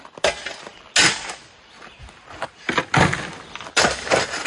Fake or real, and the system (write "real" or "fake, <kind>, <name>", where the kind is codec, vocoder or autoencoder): real